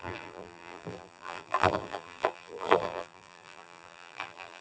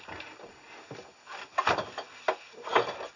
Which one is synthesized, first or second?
first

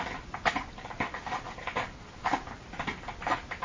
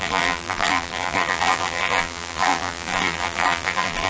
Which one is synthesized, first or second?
second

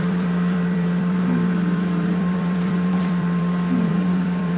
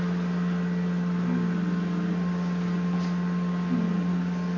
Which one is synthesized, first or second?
first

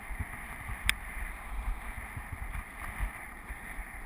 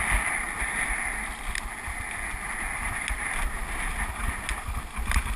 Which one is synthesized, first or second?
first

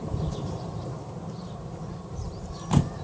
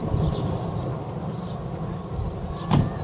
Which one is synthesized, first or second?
first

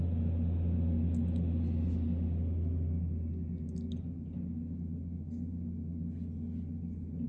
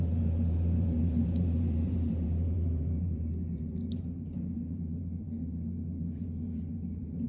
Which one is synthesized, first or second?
second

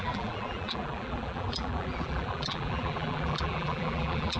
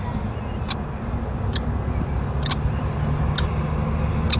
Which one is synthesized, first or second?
first